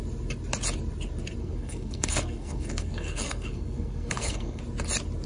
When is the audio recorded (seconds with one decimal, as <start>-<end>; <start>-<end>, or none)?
0.0-1.4; 4.6-5.3